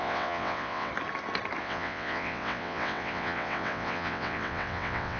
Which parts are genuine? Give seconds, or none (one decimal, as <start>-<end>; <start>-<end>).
0.9-1.6